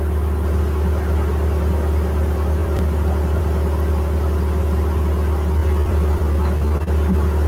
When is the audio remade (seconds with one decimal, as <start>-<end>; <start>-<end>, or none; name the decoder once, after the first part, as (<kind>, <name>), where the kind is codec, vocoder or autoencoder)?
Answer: 2.6-3.4 (vocoder, BigVGAN v2); 5.6-6.2

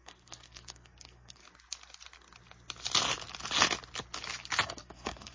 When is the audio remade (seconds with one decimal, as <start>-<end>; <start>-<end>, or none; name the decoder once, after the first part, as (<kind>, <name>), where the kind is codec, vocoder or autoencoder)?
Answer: 0.0-1.4 (codec, SNAC); 4.6-5.3

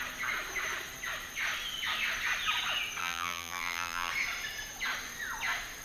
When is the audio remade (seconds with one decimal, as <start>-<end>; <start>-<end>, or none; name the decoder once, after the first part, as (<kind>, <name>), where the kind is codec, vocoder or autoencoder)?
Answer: 3.0-4.1 (vocoder, BigVGAN v2)

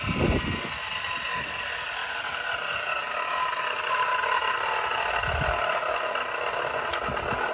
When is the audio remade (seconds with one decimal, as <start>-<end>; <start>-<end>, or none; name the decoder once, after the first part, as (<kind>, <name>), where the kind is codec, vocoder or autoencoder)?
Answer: none

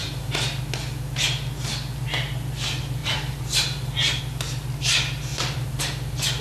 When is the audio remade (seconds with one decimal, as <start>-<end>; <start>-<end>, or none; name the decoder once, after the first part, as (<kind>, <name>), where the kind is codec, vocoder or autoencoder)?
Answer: 0.0-0.6 (vocoder, BigVGAN v2); 3.0-4.2; 5.3-5.8

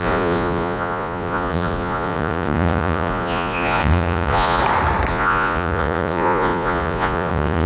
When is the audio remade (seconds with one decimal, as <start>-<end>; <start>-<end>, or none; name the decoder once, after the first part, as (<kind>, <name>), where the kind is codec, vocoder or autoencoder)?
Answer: 0.0-4.6 (vocoder, Vocos); 5.1-7.7

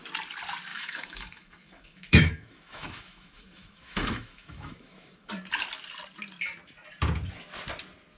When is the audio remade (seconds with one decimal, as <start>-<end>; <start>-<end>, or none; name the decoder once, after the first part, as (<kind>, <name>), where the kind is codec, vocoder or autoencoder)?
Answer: 0.7-5.3 (autoencoder, DAC-VAE)